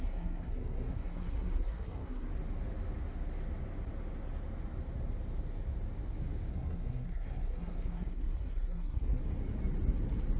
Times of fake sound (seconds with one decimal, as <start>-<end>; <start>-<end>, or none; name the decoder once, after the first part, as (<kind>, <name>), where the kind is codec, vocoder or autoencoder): 0.0-2.3 (codec, SNAC); 6.5-9.2